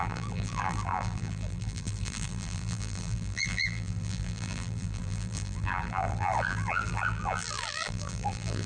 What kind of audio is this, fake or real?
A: fake